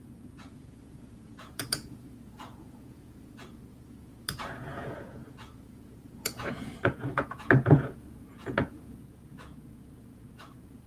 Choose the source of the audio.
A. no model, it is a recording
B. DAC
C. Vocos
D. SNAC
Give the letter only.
C